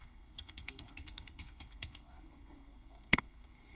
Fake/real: fake